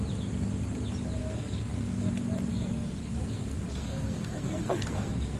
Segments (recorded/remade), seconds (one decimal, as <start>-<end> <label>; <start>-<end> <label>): 0.0-1.2 recorded; 1.2-2.1 remade; 2.1-2.5 recorded; 2.5-5.4 remade